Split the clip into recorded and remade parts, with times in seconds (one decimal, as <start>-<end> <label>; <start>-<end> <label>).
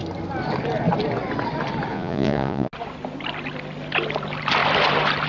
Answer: 0.0-1.9 recorded; 1.9-2.7 remade; 2.7-5.3 recorded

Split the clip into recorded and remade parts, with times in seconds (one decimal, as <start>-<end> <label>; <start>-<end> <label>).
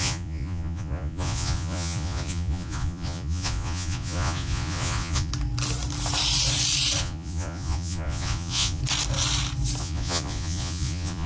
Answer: 0.0-5.3 remade; 5.3-7.0 recorded; 7.0-8.8 remade; 8.8-9.8 recorded; 9.8-11.3 remade